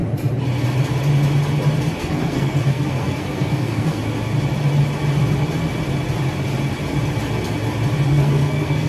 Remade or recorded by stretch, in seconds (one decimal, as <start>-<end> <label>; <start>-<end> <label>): 0.0-2.0 recorded; 2.0-4.0 remade; 4.0-8.1 recorded; 8.1-8.9 remade